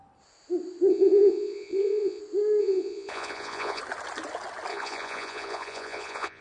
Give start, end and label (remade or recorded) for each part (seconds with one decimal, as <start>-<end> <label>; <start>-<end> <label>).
0.0-0.9 recorded; 0.9-2.2 remade; 2.2-2.6 recorded; 2.6-3.8 remade; 3.8-4.7 recorded; 4.7-6.4 remade